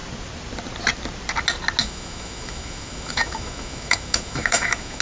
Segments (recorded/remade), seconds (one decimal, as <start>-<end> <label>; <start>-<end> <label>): 0.0-1.8 recorded; 1.8-5.0 remade